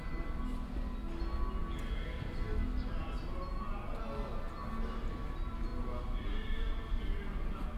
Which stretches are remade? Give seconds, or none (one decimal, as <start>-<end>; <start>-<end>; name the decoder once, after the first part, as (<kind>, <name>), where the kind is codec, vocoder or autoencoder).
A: none